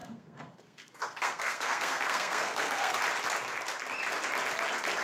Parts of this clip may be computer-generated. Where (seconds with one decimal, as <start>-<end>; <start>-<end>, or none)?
0.0-3.0